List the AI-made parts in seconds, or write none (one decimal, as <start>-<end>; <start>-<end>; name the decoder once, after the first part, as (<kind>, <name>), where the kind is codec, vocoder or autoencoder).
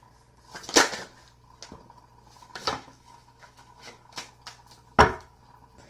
2.5-4.3 (autoencoder, DAC-VAE)